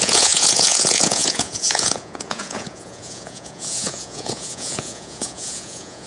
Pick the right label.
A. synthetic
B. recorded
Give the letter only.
A